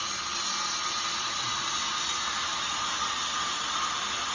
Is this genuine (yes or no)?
yes